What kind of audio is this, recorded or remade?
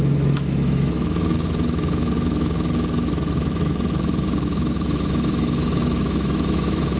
remade